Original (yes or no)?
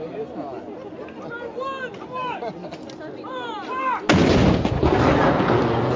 yes